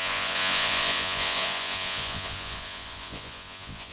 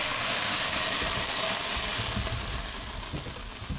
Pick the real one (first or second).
second